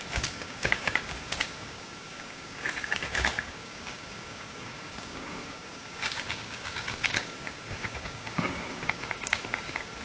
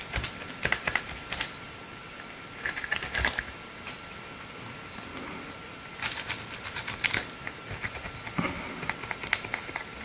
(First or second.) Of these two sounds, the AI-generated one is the first